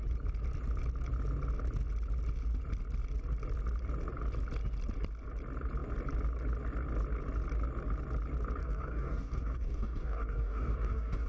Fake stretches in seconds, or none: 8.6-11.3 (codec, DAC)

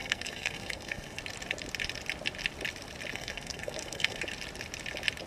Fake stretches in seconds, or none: 0.0-1.2 (codec, SNAC); 3.1-4.2

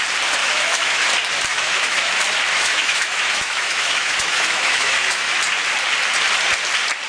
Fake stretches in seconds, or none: 0.4-1.0 (autoencoder, DAC-VAE); 1.5-2.1; 2.5-5.3

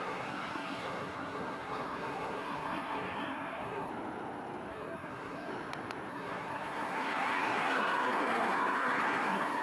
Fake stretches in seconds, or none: 0.0-3.9 (codec, SNAC); 4.7-5.5; 6.1-9.6

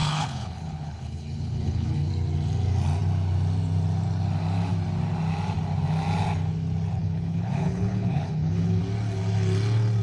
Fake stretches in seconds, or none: 0.0-2.1 (codec, HILCodec); 7.0-8.8